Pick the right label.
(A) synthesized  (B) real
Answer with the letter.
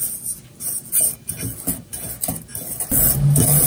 B